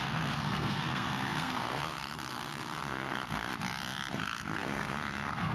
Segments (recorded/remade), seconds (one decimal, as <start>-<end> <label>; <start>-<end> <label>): 0.0-3.5 remade; 3.5-4.1 recorded; 4.1-5.5 remade